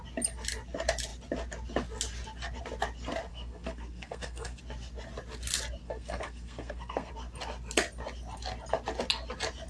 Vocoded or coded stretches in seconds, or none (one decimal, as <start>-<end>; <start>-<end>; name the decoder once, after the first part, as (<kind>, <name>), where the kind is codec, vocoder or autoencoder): 3.3-4.6 (codec, SNAC); 5.8-7.1